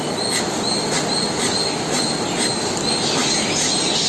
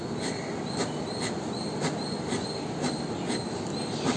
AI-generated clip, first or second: second